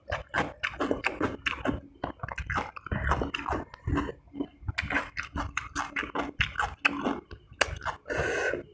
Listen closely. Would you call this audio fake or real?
real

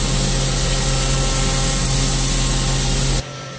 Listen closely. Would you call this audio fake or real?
real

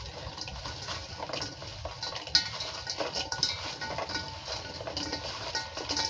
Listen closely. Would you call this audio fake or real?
real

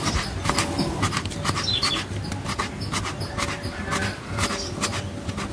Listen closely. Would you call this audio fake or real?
real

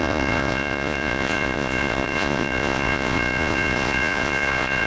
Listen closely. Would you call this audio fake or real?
fake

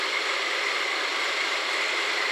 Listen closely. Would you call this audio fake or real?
fake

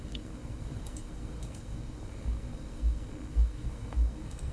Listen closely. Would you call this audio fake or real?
fake